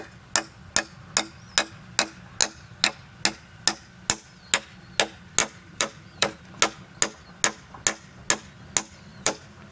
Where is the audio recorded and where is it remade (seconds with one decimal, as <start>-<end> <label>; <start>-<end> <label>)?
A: 0.0-5.4 recorded; 5.4-6.4 remade; 6.4-9.1 recorded; 9.1-9.7 remade